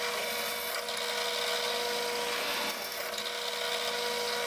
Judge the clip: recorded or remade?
recorded